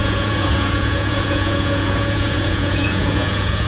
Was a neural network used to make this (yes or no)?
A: yes